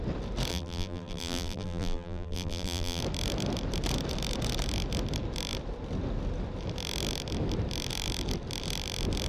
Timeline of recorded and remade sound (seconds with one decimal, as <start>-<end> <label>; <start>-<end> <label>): 0.0-0.5 recorded; 0.5-3.0 remade; 3.0-9.3 recorded